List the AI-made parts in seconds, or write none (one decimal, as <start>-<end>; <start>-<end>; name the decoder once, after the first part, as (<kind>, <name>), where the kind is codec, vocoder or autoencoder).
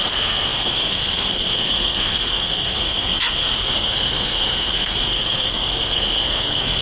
0.0-6.8 (codec, SNAC)